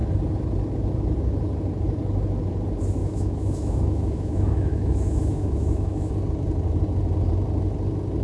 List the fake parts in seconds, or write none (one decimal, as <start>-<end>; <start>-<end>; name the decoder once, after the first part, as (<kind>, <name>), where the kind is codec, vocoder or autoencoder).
3.0-6.1 (autoencoder, DAC-VAE)